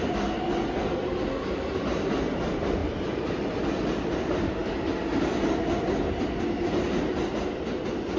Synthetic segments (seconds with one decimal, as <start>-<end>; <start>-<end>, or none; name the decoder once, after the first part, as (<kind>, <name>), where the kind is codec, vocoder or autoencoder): 2.8-4.1 (vocoder, BigVGAN v2)